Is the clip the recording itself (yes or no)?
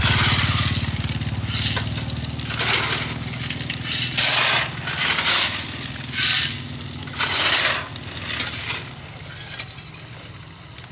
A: yes